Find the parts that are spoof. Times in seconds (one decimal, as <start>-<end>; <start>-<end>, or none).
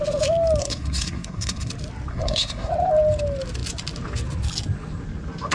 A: 0.6-1.7; 2.1-2.7